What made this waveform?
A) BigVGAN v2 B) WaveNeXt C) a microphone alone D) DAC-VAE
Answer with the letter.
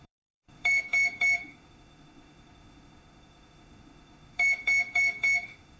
D